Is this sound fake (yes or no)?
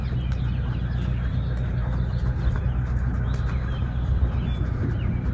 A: no